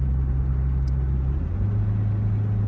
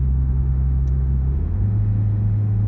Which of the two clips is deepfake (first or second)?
second